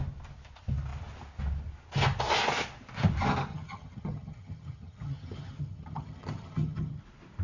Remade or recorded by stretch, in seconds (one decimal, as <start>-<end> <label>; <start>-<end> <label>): 0.0-3.5 recorded; 3.5-7.0 remade; 7.0-7.4 recorded